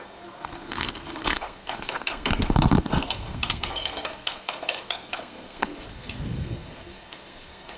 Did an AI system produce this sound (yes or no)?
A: yes